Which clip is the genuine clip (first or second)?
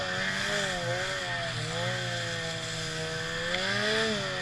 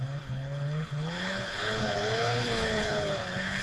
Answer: first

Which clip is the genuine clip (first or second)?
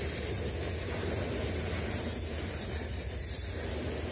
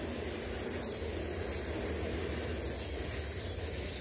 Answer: second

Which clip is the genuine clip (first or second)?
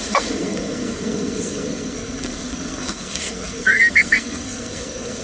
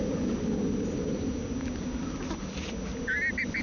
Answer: second